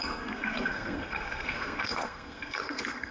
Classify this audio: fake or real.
fake